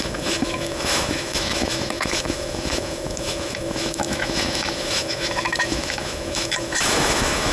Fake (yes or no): yes